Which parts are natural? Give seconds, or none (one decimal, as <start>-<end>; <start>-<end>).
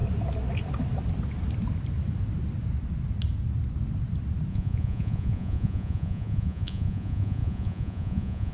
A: 0.0-4.5